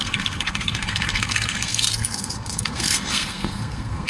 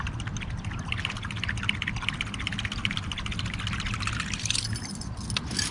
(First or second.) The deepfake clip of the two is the first